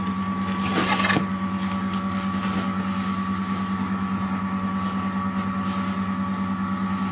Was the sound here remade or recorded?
recorded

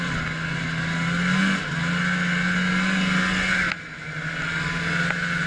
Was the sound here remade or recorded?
recorded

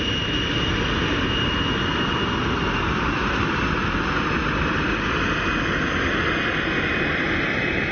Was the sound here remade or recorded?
recorded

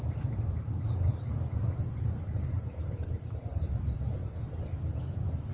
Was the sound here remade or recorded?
remade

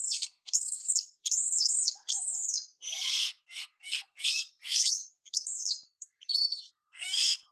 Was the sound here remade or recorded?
remade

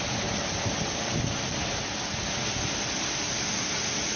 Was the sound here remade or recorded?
recorded